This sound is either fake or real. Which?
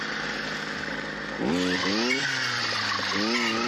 real